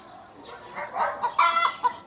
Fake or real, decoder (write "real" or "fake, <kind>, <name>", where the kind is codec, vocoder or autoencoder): real